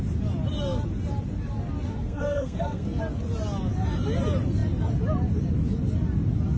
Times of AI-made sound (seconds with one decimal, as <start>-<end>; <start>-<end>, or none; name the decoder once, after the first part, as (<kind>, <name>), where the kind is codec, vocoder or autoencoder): 1.9-3.0 (codec, SNAC)

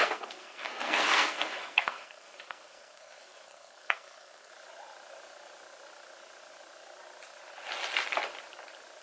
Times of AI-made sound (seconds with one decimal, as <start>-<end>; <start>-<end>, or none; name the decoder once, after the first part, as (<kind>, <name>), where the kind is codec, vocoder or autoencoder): 0.0-4.5 (codec, SNAC)

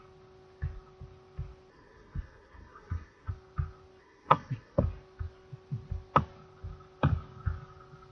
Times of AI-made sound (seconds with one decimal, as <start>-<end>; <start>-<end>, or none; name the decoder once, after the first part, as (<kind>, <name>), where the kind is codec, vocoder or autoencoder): 1.7-3.3 (codec, SNAC); 4.0-4.8

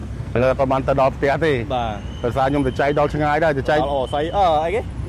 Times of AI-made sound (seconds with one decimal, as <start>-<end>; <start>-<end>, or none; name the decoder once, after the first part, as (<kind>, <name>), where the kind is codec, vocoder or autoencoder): 0.0-0.6 (codec, SNAC)

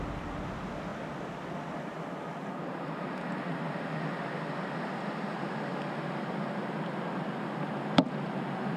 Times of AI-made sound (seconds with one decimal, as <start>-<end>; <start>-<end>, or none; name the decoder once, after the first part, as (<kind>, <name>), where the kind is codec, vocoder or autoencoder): none

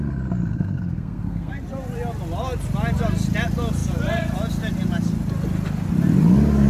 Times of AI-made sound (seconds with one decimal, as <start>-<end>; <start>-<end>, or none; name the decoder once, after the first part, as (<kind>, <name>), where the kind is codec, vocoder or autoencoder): 0.5-1.5 (codec, SNAC)